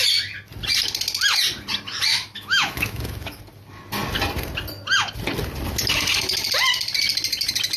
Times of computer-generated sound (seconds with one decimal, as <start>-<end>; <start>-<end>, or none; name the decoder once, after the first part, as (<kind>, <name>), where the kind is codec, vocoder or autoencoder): 2.1-3.4 (autoencoder, DAC-VAE)